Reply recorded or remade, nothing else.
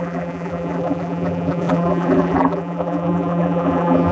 remade